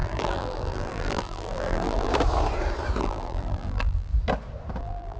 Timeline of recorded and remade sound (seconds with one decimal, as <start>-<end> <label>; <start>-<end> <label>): 0.0-2.1 remade; 2.1-3.0 recorded; 3.0-4.1 remade; 4.1-4.8 recorded; 4.8-5.2 remade